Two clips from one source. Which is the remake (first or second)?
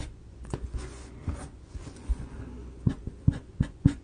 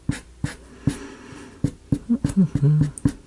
first